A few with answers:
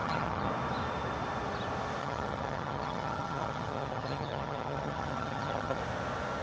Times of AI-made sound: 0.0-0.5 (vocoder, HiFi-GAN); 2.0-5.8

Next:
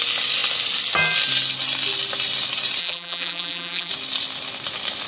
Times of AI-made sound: 2.8-3.9 (vocoder, BigVGAN v2)

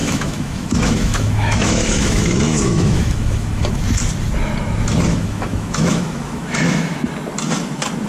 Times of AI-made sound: 0.0-3.8 (autoencoder, DAC-VAE); 5.1-7.0